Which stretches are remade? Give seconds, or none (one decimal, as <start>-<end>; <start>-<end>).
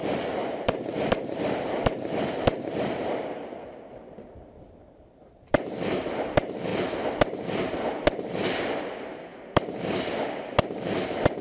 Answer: 0.4-2.0